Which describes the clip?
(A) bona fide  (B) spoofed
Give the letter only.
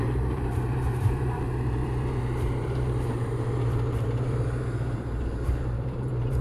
B